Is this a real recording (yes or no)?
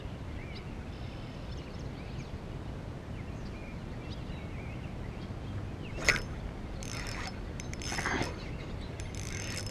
yes